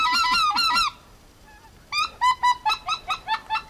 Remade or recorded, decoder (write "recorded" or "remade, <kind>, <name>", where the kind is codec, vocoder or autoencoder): recorded